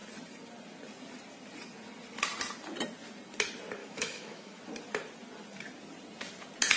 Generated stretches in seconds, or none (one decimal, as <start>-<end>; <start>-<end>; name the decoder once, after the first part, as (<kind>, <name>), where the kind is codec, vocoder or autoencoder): 3.8-4.6 (autoencoder, DAC-VAE)